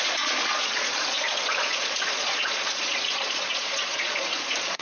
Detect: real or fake fake